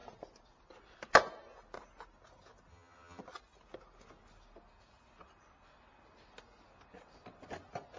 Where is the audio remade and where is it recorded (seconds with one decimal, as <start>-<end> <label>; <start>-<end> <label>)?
0.0-2.7 recorded; 2.7-3.2 remade; 3.2-8.0 recorded